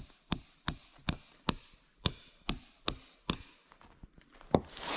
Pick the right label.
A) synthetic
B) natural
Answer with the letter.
B